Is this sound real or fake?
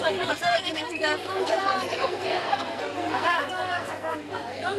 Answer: fake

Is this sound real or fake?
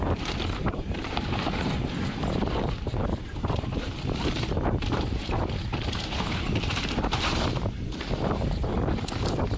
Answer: fake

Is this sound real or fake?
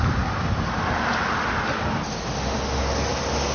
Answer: real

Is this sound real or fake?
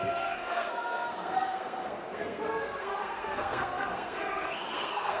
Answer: fake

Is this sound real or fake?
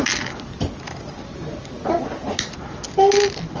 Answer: real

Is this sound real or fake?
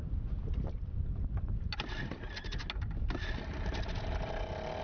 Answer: real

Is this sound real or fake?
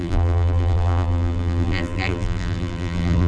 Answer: fake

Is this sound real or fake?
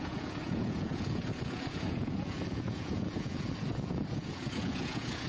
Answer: fake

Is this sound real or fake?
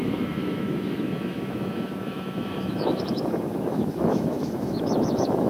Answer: fake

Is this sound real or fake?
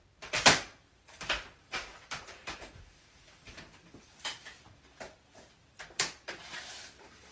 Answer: fake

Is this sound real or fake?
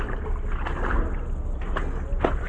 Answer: real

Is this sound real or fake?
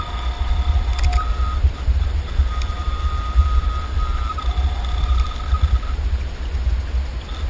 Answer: real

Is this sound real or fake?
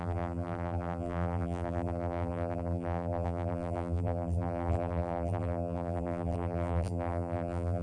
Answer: fake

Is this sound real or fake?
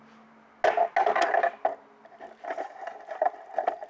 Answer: real